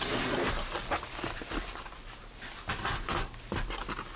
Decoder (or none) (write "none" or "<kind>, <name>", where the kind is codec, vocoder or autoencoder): none